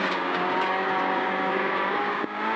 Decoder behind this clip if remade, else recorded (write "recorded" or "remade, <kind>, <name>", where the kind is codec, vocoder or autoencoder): remade, codec, DAC